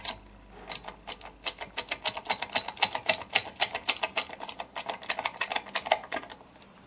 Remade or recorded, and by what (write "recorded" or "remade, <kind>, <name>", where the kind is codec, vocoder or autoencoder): recorded